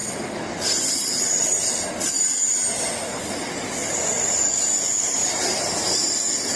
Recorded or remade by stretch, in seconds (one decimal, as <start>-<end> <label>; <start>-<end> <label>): 0.0-6.6 recorded